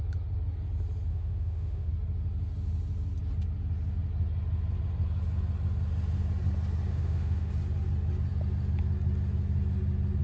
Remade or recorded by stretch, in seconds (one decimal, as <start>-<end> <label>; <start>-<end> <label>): 0.0-1.1 recorded; 1.1-1.9 remade; 1.9-6.9 recorded; 6.9-7.5 remade; 7.5-10.2 recorded